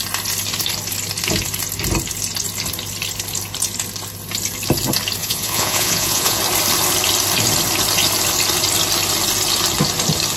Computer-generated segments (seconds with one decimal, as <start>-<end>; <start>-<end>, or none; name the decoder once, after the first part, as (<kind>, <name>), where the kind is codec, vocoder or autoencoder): 5.2-6.4 (vocoder, Vocos)